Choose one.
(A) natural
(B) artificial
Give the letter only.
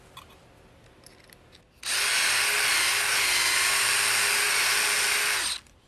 A